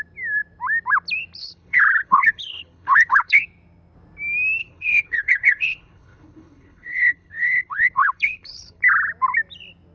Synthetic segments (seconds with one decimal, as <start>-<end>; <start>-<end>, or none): 1.4-3.4; 4.6-8.8